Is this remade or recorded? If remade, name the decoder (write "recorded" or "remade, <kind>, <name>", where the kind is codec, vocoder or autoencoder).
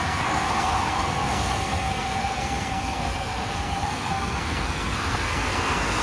remade, codec, SNAC